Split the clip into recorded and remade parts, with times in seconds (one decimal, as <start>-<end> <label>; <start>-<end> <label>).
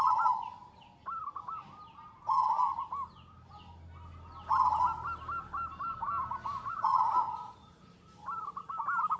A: 0.0-6.5 recorded; 6.5-7.9 remade; 7.9-9.2 recorded